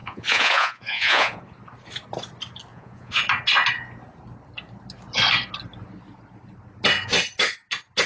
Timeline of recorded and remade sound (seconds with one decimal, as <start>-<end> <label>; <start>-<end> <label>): 0.0-1.4 remade; 1.4-2.7 recorded; 2.7-3.2 remade; 3.2-8.1 recorded